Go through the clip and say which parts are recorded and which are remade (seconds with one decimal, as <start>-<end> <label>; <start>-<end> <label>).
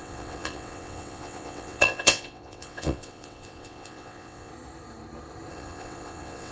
0.0-4.5 remade; 4.5-5.5 recorded; 5.5-6.5 remade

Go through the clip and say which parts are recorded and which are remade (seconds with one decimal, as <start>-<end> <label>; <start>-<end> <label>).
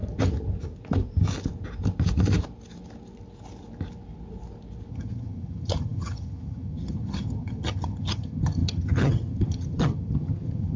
0.0-4.9 recorded; 4.9-10.8 remade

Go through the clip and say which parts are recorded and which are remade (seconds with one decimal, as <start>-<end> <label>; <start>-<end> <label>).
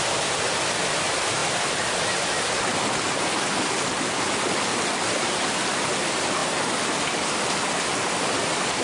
0.0-8.8 recorded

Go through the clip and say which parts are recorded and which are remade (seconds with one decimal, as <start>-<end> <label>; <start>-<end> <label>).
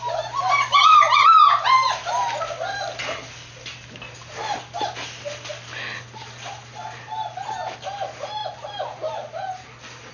0.0-10.1 recorded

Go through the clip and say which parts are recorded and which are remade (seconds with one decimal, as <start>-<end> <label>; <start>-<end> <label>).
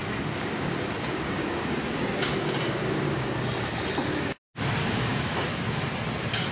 0.0-3.3 remade; 3.3-4.8 recorded; 4.8-5.5 remade; 5.5-6.5 recorded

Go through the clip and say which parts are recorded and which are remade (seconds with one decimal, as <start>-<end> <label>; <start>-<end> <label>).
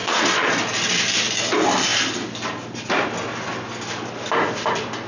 0.0-0.6 remade; 0.6-5.1 recorded